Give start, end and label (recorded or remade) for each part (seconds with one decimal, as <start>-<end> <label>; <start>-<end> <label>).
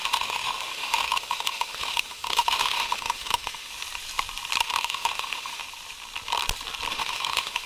0.0-3.7 remade; 3.7-4.6 recorded; 4.6-5.6 remade; 5.6-6.9 recorded; 6.9-7.7 remade